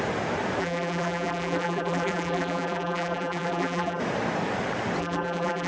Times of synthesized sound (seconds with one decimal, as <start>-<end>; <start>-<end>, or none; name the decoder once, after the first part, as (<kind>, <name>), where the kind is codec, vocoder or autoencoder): 0.6-4.0 (vocoder, BigVGAN v2); 5.0-5.7